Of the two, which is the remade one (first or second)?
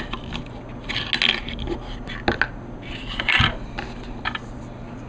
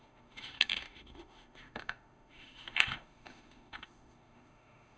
second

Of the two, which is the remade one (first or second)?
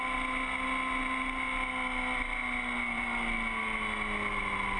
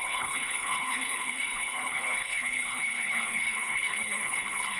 second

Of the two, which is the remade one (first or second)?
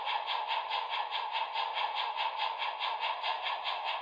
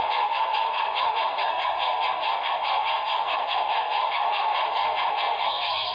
second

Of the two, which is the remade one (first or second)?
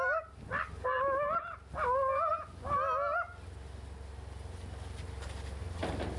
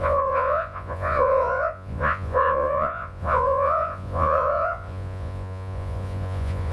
second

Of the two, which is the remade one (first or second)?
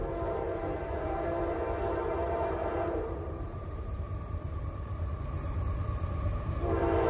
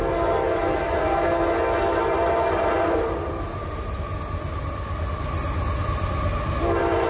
first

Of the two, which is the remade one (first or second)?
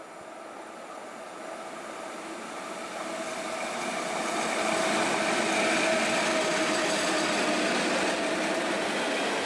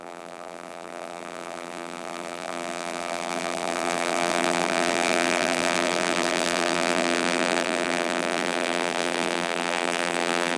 second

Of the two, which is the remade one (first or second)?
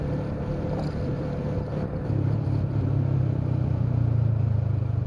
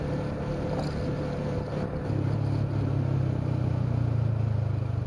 first